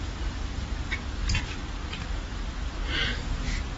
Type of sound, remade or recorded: recorded